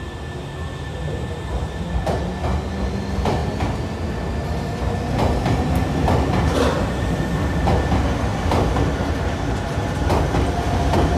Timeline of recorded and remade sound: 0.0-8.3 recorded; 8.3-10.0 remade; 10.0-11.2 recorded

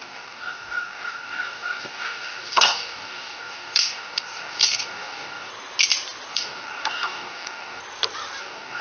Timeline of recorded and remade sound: 0.0-5.5 remade; 5.5-6.3 recorded; 6.3-7.8 remade; 7.8-8.4 recorded; 8.4-8.8 remade